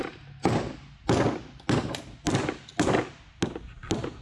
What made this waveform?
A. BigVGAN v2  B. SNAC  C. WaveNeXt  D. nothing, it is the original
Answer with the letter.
D